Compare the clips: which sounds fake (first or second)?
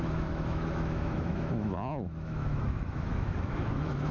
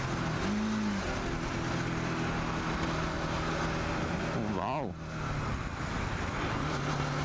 first